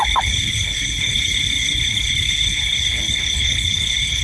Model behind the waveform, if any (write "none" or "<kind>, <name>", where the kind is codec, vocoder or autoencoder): codec, HILCodec